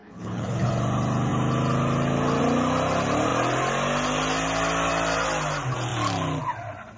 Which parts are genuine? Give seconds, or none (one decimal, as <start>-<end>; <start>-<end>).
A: 0.7-7.0